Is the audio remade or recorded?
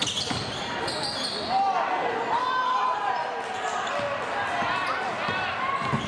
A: recorded